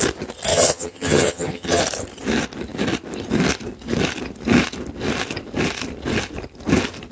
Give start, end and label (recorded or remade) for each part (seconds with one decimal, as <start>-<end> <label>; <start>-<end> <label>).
0.0-0.5 recorded; 0.5-1.8 remade; 1.8-7.1 recorded